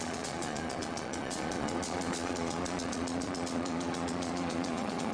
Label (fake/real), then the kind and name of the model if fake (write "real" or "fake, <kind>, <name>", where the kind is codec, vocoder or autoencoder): fake, vocoder, Vocos